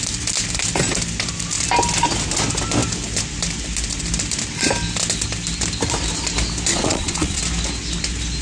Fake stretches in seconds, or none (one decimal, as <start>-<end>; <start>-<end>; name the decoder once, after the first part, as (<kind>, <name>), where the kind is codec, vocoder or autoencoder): 6.7-7.4 (vocoder, Vocos)